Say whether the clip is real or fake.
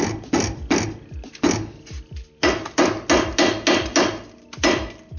real